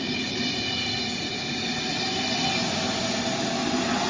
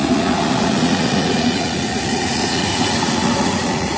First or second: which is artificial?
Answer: second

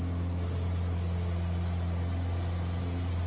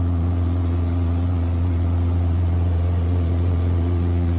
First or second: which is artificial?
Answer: second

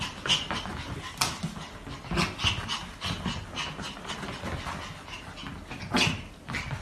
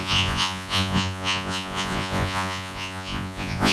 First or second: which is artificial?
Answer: second